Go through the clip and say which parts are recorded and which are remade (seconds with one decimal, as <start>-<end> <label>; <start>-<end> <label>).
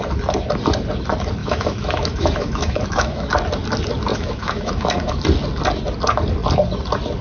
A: 0.0-1.4 recorded; 1.4-3.3 remade; 3.3-4.1 recorded; 4.1-5.2 remade; 5.2-7.2 recorded